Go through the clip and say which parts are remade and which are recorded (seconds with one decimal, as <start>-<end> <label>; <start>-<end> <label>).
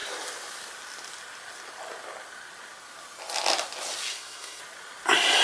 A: 0.0-4.1 recorded; 4.1-4.6 remade; 4.6-5.4 recorded